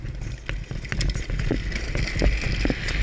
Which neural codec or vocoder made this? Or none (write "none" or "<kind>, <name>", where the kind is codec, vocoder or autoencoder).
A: none